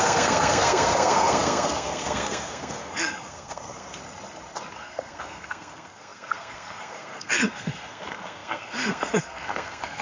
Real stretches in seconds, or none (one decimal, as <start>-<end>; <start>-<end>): 4.0-4.7